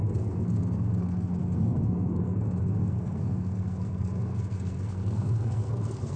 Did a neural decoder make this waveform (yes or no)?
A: yes